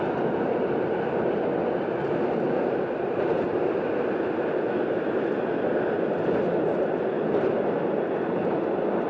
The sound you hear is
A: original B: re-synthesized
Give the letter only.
A